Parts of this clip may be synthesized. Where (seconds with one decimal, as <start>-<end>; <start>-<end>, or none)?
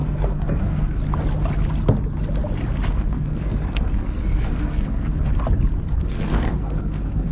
0.0-1.0; 2.9-5.3; 5.9-7.3